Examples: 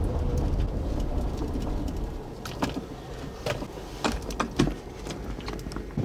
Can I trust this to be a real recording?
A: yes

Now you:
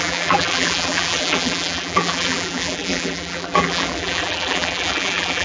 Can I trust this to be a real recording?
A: no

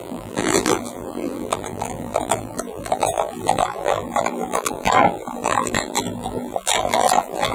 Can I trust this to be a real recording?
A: no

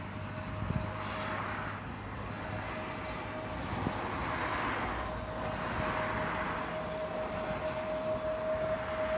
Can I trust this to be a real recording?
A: yes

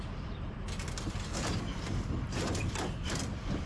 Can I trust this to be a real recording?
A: no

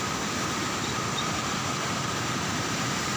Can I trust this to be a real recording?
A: no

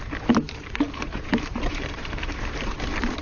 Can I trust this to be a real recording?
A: no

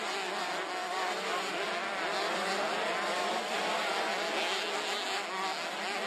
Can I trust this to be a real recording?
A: yes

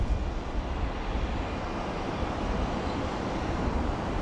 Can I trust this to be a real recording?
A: yes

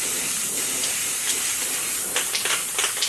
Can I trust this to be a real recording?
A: no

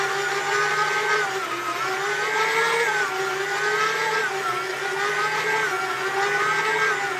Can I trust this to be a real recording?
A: yes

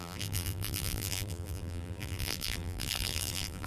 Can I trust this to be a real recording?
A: no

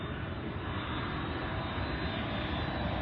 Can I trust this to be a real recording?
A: no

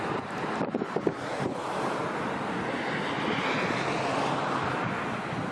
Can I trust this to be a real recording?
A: yes